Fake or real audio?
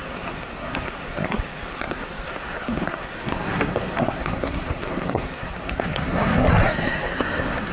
fake